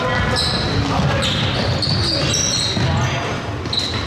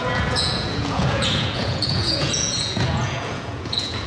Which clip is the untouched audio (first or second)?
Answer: first